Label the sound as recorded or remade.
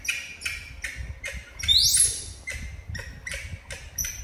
recorded